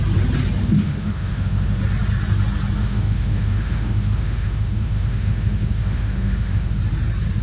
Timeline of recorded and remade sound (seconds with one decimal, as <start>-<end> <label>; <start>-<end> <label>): 0.0-0.6 recorded; 0.6-1.8 remade; 1.8-2.8 recorded; 2.8-6.8 remade; 6.8-7.4 recorded